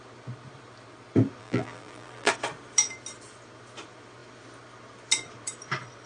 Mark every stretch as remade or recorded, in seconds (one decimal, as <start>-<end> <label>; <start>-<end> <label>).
0.0-1.4 recorded; 1.4-2.3 remade; 2.3-6.1 recorded